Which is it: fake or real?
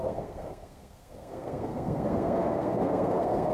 fake